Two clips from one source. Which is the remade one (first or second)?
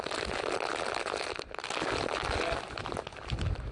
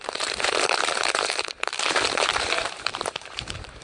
second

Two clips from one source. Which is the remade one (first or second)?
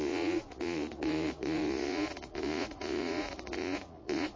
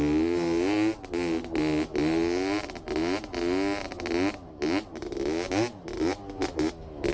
first